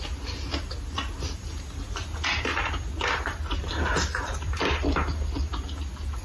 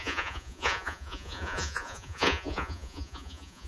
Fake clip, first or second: second